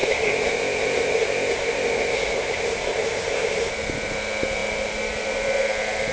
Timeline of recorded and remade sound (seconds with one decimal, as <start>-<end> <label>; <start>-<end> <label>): 0.0-3.7 remade; 3.7-6.1 recorded